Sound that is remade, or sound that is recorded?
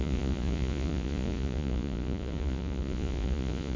remade